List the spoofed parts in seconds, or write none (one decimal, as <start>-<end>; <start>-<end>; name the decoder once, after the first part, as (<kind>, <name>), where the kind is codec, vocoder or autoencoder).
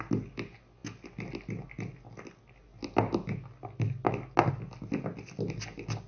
none